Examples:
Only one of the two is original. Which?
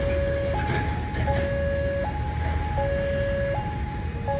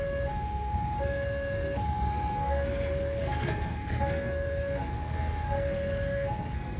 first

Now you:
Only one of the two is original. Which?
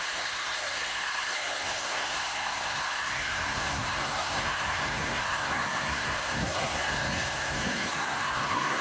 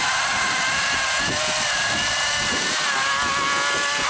second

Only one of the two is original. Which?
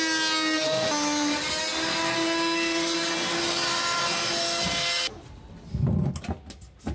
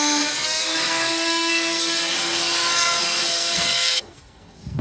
first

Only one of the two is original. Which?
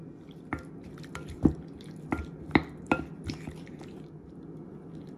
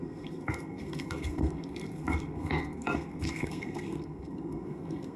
first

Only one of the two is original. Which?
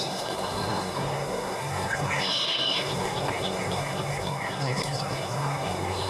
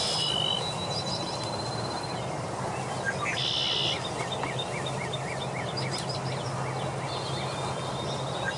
second